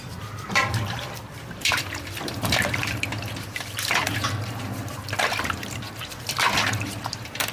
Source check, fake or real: fake